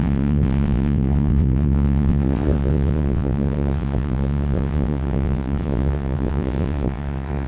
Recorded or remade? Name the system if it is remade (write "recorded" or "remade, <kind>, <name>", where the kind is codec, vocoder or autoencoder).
remade, vocoder, WaveNeXt